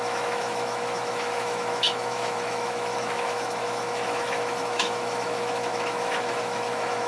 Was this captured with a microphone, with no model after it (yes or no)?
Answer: no